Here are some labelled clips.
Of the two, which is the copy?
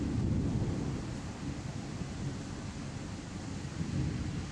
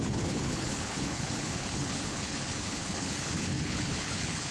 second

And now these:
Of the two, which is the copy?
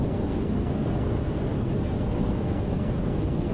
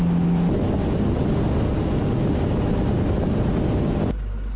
first